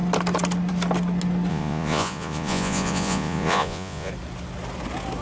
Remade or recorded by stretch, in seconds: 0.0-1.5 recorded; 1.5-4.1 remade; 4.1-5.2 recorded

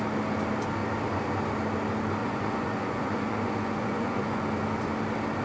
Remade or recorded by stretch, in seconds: 0.0-2.2 recorded; 2.2-4.4 remade; 4.4-5.4 recorded

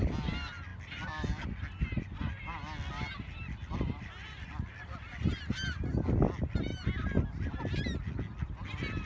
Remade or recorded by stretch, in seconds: 0.0-9.1 recorded

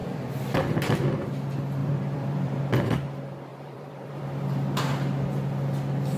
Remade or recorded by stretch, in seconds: 0.0-0.5 remade; 0.5-1.8 recorded; 1.8-2.6 remade; 2.6-3.5 recorded; 3.5-4.2 remade; 4.2-6.2 recorded

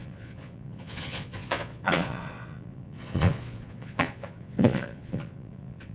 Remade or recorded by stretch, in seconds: 0.0-5.9 remade

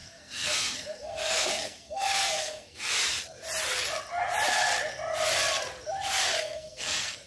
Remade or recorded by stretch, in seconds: 0.0-2.9 remade; 2.9-6.4 recorded; 6.4-7.3 remade

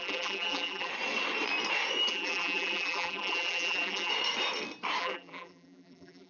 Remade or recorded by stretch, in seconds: 0.0-0.9 remade; 0.9-2.1 recorded; 2.1-4.1 remade; 4.1-5.0 recorded; 5.0-6.3 remade